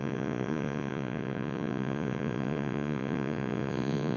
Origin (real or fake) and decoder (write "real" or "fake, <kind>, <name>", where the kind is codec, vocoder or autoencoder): fake, vocoder, Vocos